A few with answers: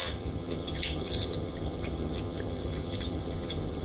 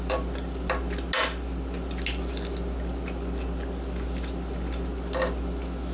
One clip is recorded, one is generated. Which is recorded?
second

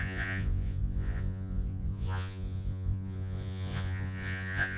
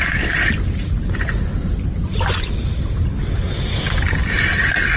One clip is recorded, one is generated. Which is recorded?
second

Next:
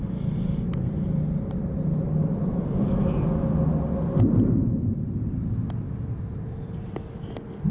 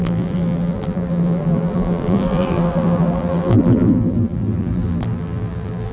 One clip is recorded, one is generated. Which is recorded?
first